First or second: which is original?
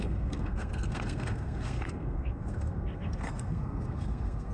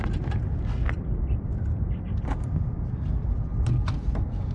second